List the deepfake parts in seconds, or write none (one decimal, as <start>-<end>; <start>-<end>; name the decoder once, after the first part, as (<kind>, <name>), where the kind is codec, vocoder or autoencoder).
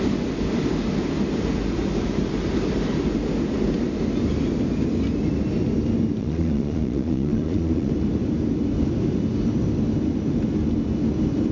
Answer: 6.2-7.9 (vocoder, Vocos)